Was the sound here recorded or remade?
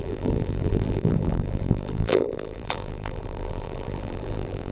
remade